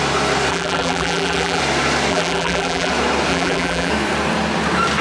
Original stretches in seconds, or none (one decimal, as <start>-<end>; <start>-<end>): 0.0-0.5; 1.6-2.1; 2.9-3.3; 3.9-5.0